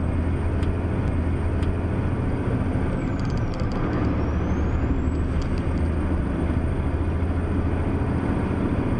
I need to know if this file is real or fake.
real